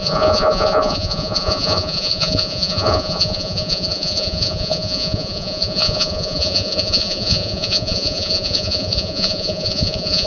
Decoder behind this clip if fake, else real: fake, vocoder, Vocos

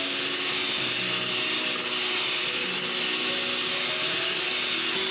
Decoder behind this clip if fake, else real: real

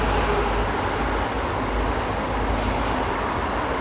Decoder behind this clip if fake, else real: real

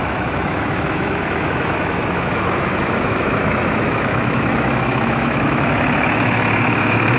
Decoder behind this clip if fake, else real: fake, autoencoder, DAC-VAE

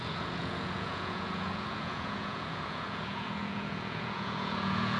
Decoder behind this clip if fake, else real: fake, vocoder, Vocos